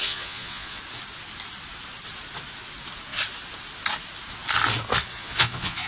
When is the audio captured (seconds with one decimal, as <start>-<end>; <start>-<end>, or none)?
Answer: 0.8-5.1